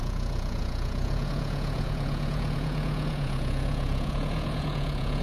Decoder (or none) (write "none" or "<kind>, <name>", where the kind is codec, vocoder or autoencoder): vocoder, Vocos